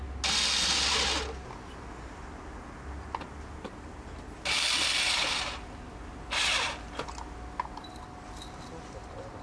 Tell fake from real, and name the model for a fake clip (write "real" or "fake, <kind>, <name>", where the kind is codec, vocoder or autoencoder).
real